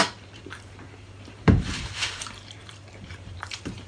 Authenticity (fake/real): fake